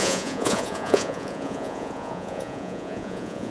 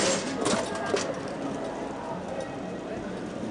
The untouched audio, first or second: second